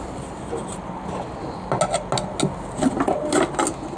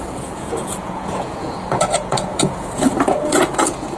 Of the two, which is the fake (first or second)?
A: second